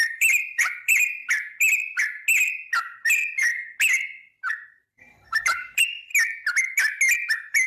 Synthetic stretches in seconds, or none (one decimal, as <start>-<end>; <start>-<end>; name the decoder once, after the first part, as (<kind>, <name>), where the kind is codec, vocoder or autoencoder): 0.0-1.2 (vocoder, BigVGAN v2); 4.5-6.1; 7.3-7.7